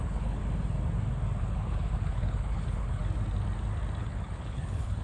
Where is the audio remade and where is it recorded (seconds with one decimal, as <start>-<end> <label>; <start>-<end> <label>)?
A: 0.0-0.4 remade; 0.4-1.4 recorded; 1.4-3.0 remade; 3.0-4.0 recorded; 4.0-5.0 remade